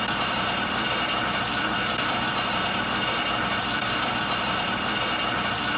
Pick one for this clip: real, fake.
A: fake